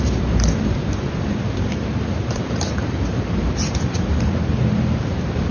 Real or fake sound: fake